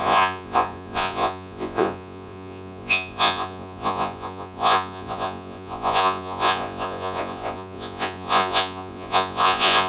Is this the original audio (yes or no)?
no